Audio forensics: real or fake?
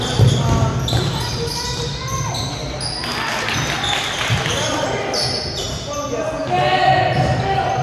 real